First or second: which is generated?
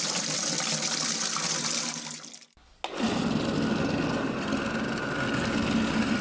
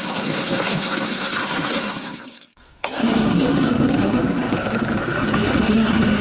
second